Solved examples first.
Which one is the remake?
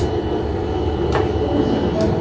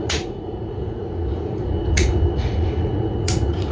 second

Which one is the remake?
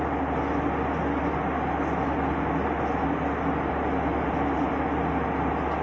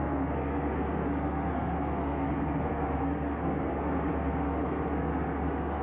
second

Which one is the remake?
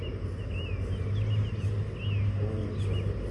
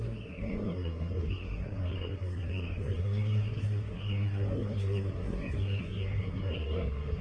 second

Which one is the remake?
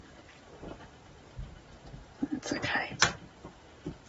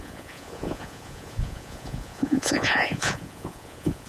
second